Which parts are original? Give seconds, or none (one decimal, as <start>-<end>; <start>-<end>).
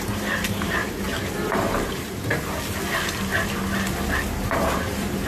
2.3-4.2